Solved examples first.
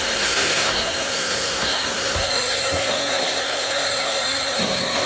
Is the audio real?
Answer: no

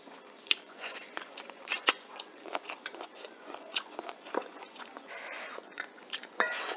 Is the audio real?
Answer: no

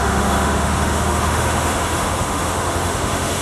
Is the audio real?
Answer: no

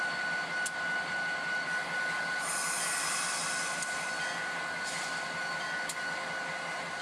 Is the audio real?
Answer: yes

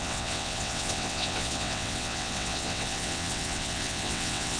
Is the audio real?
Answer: no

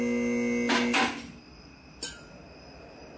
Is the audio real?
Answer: yes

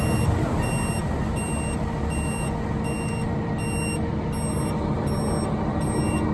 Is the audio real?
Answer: yes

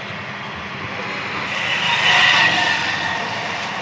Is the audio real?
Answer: yes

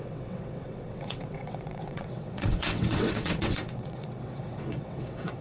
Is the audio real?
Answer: no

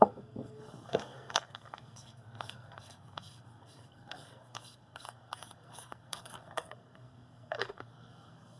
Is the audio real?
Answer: no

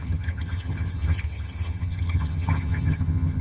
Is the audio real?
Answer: no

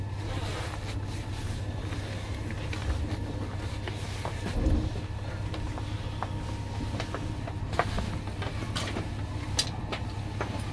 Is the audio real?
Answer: yes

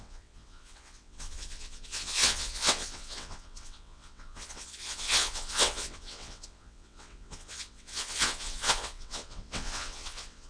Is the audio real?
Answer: no